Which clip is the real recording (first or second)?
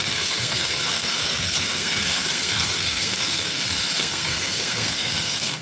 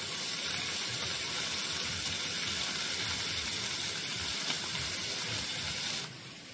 second